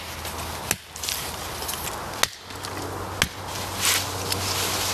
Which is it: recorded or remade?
recorded